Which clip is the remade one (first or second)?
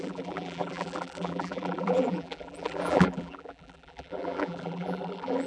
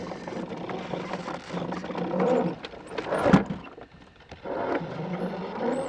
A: first